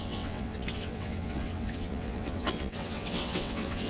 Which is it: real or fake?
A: fake